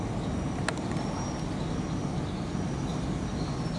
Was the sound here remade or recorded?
recorded